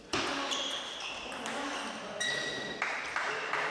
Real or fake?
real